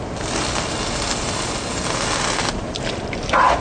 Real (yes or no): no